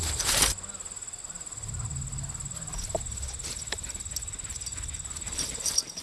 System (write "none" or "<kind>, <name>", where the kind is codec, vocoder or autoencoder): none